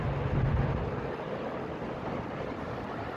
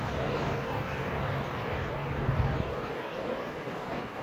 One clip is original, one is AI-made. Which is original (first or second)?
first